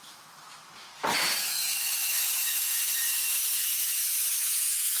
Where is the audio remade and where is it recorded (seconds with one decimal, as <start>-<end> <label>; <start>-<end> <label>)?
0.0-0.9 remade; 0.9-1.4 recorded; 1.4-5.0 remade